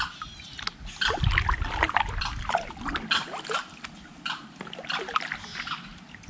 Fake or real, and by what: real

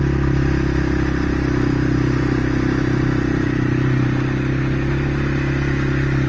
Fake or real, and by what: real